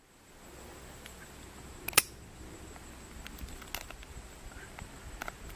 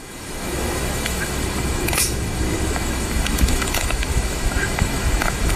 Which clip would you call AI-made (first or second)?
second